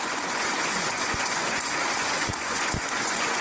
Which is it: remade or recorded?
remade